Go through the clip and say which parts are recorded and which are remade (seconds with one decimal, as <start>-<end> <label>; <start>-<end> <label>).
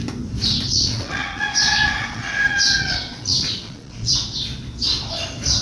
0.0-0.7 recorded; 0.7-4.1 remade; 4.1-5.6 recorded